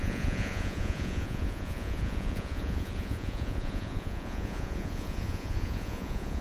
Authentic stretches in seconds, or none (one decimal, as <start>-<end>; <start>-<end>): none